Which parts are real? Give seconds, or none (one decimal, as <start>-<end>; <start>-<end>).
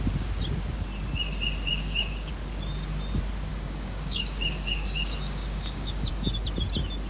0.0-1.7; 2.3-3.5; 6.1-7.1